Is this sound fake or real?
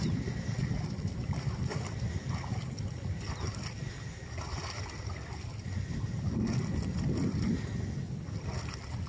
real